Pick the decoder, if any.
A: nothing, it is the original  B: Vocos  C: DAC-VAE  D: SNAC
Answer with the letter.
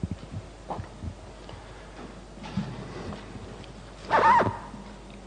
A